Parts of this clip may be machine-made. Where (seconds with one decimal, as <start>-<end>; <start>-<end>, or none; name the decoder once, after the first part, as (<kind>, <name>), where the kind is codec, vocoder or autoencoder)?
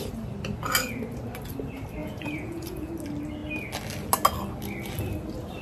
2.0-2.9 (vocoder, Vocos)